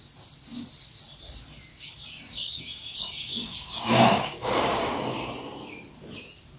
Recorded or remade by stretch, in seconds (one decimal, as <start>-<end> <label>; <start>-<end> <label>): 0.0-1.7 recorded; 1.7-5.3 remade; 5.3-6.6 recorded